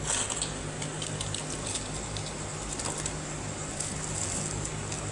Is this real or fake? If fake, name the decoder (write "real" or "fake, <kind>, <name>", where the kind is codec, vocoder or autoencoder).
real